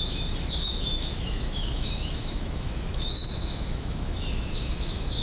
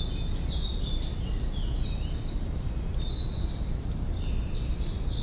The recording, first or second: second